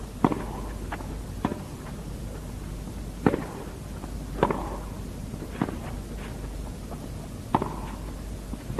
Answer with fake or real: real